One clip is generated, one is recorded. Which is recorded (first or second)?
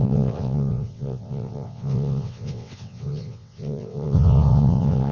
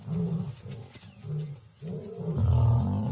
second